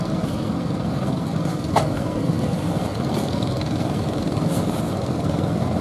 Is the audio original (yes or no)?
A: no